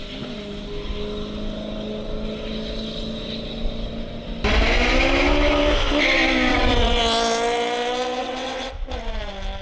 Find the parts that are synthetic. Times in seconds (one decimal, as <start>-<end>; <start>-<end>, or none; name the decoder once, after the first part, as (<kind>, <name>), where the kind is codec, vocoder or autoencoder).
6.5-7.0 (vocoder, WaveNeXt); 8.2-8.7